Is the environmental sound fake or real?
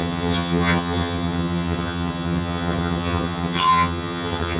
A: fake